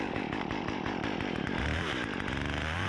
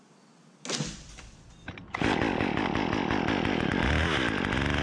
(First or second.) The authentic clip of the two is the second